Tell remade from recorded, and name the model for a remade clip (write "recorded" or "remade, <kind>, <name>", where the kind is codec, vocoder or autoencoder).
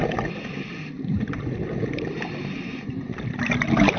recorded